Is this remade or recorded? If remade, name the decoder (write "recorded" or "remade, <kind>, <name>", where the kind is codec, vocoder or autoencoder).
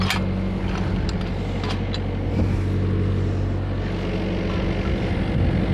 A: recorded